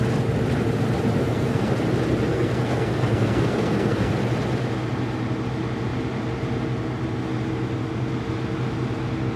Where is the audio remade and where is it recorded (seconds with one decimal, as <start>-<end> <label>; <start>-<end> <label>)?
0.0-1.2 recorded; 1.2-1.7 remade; 1.7-2.3 recorded; 2.3-4.1 remade; 4.1-9.4 recorded